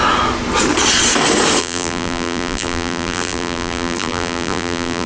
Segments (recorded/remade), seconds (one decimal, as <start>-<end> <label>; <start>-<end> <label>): 0.0-1.6 recorded; 1.6-5.1 remade